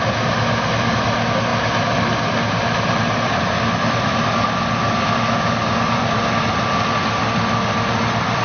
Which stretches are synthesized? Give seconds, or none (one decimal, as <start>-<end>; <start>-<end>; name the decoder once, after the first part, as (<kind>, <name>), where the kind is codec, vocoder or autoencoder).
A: none